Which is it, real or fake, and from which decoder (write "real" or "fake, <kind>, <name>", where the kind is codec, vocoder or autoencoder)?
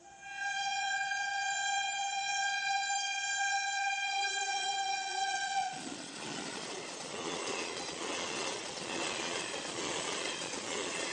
fake, vocoder, Vocos